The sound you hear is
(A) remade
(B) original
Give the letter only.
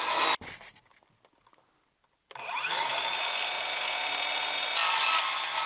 B